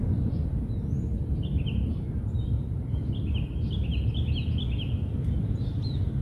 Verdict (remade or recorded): recorded